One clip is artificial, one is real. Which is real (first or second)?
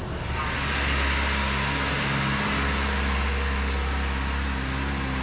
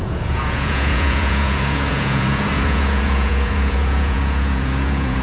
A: first